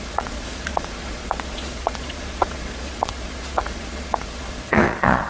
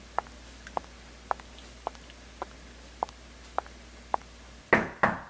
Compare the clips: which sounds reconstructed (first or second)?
first